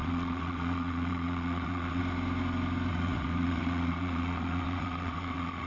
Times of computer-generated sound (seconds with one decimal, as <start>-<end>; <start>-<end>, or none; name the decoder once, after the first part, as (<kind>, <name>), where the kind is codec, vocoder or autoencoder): 0.0-2.0 (vocoder, WaveNeXt); 2.9-5.7